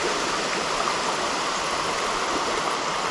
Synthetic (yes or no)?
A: no